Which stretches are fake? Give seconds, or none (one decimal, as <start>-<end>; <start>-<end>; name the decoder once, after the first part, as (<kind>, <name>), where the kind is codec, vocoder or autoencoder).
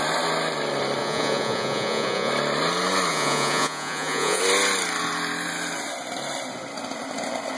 1.0-2.3 (vocoder, Vocos); 3.1-4.4